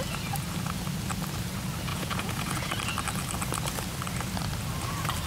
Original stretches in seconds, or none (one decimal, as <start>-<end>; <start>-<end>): 0.0-1.9; 2.7-5.3